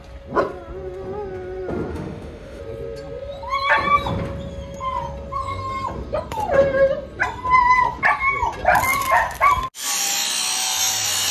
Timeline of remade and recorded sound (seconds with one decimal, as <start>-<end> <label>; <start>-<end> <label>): 0.0-1.9 recorded; 1.9-2.6 remade; 2.6-11.3 recorded